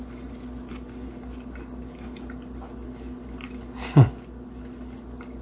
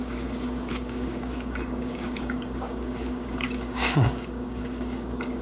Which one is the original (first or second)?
first